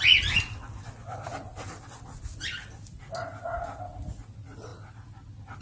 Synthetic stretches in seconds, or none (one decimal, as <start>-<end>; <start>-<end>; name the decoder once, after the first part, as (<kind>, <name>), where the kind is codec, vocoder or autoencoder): none